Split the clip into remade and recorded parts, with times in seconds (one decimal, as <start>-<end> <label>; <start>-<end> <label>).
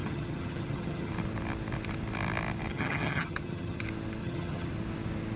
0.0-1.1 remade; 1.1-2.7 recorded; 2.7-3.8 remade; 3.8-4.2 recorded; 4.2-4.7 remade; 4.7-5.4 recorded